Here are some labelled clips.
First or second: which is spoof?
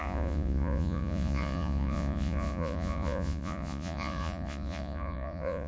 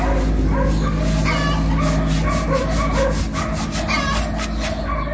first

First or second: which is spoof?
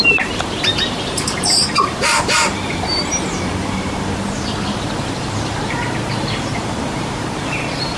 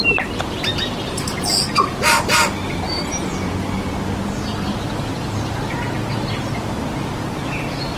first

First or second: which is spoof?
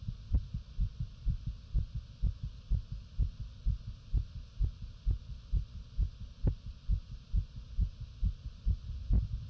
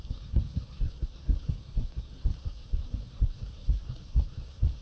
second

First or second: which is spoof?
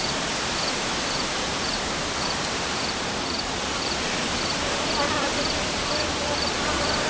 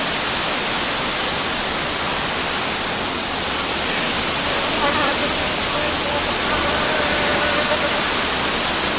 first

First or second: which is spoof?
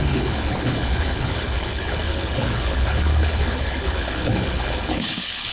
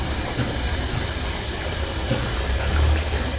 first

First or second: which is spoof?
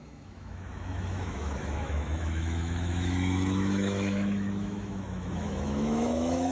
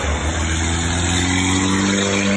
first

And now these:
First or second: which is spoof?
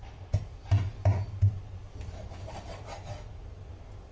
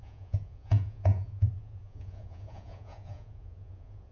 second